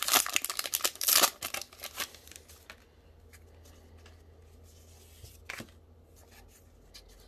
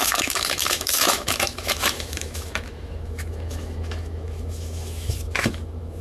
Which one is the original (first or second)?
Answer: first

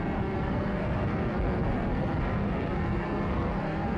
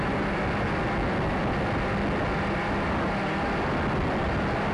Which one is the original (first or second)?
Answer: second